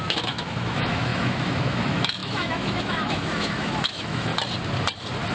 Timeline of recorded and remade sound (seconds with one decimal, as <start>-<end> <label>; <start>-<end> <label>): 0.0-4.3 remade; 4.3-5.3 recorded